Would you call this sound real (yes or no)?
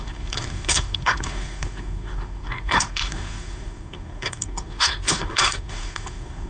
no